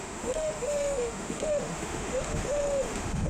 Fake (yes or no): yes